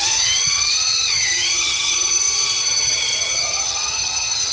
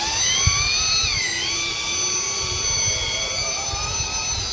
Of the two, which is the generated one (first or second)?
first